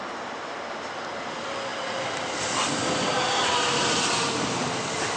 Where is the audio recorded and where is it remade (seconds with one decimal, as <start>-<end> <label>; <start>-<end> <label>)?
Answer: 0.0-5.2 recorded